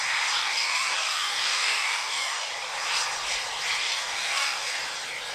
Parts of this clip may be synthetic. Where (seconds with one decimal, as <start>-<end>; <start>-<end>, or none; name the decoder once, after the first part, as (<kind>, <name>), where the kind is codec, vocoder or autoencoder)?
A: 0.4-2.5 (codec, DAC); 3.8-4.8